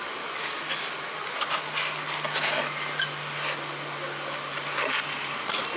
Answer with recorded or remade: recorded